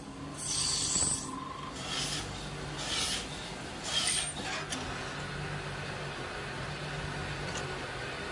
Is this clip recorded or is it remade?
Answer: recorded